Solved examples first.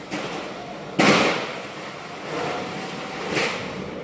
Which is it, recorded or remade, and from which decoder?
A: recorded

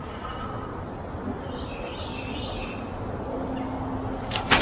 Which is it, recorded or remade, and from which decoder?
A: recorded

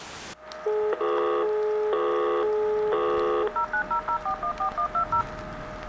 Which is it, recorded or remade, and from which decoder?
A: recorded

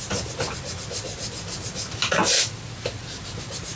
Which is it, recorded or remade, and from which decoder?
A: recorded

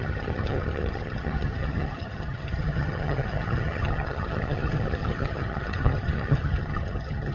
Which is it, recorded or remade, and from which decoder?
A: remade, vocoder, HiFi-GAN